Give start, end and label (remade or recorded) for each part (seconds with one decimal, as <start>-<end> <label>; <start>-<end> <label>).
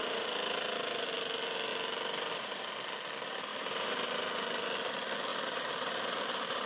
0.0-3.5 recorded; 3.5-4.3 remade; 4.3-5.3 recorded; 5.3-6.7 remade